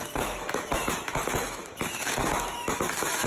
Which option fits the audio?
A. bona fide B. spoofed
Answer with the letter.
B